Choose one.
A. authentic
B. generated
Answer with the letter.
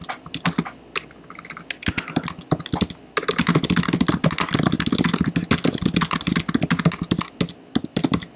A